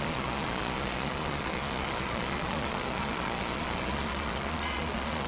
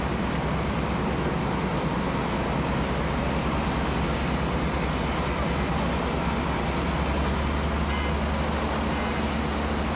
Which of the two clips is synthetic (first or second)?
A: first